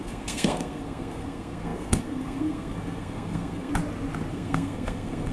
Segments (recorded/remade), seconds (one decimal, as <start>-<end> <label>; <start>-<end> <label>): 0.0-3.7 remade; 3.7-4.3 recorded; 4.3-5.3 remade